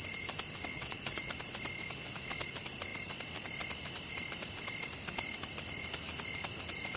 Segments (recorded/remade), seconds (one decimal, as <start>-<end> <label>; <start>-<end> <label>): 0.0-0.7 recorded; 0.7-1.3 remade; 1.3-7.0 recorded